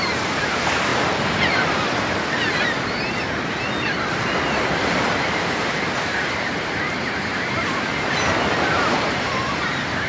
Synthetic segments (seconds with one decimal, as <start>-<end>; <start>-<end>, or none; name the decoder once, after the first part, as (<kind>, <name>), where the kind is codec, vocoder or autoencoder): 0.0-0.9 (vocoder, BigVGAN v2); 6.0-7.9; 8.8-10.1